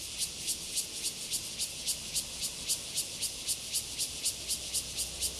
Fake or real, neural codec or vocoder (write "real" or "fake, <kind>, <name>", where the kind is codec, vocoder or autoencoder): real